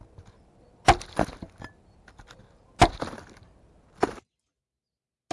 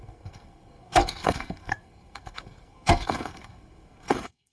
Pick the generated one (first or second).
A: second